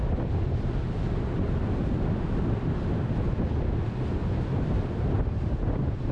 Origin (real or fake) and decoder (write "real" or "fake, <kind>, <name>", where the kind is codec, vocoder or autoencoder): real